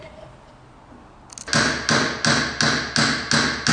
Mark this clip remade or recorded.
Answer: recorded